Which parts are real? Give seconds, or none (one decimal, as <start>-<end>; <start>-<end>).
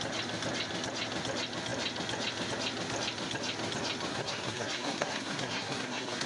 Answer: 0.0-4.1